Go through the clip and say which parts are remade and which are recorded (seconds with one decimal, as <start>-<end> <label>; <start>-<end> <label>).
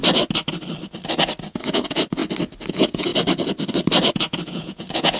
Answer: 0.0-1.5 recorded; 1.5-2.2 remade; 2.2-2.7 recorded; 2.7-3.1 remade; 3.1-4.1 recorded; 4.1-5.2 remade